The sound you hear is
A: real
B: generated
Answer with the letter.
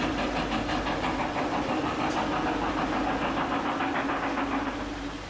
A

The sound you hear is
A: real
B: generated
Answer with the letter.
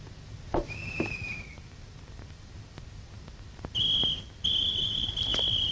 A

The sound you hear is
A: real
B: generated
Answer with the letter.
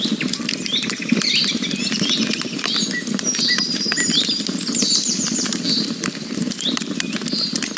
B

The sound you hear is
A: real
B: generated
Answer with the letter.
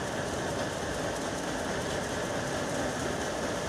A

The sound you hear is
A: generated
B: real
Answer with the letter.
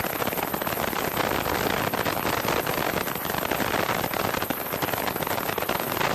B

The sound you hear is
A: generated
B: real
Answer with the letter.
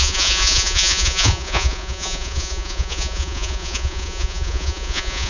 A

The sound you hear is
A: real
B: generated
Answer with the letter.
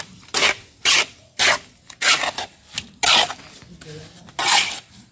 A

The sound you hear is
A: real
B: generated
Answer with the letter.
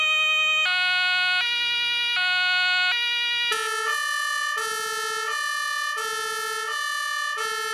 A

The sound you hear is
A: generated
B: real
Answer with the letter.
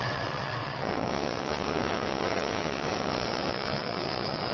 A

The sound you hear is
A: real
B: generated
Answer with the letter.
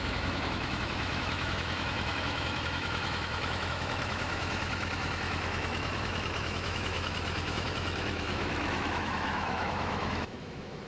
B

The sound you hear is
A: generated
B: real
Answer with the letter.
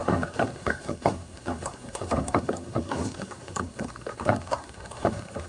A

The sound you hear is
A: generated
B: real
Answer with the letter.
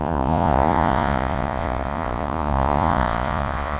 A